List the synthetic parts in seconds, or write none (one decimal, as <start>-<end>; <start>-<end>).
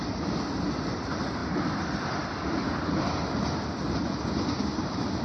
none